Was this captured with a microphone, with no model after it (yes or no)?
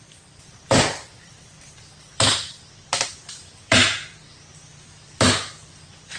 no